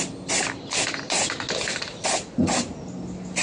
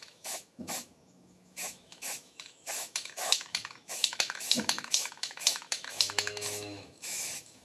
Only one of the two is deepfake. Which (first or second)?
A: second